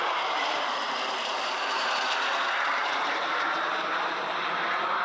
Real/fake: fake